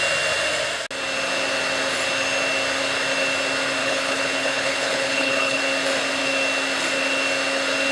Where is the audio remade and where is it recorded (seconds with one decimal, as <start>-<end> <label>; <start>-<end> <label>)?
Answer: 0.0-3.8 recorded; 3.8-5.6 remade; 5.6-7.9 recorded